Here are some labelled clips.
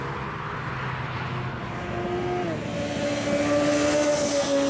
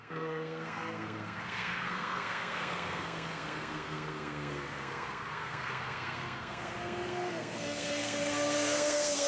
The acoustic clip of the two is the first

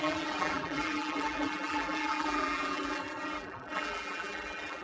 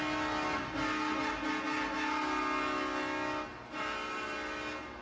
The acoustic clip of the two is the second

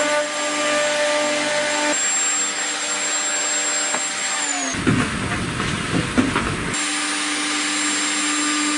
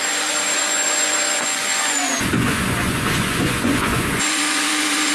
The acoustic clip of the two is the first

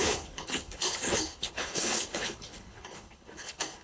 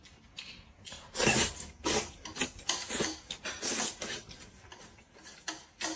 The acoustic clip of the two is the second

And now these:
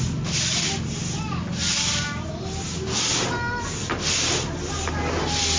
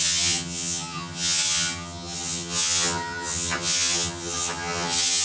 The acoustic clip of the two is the first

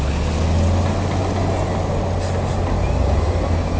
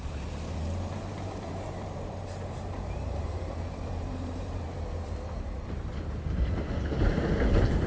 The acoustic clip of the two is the first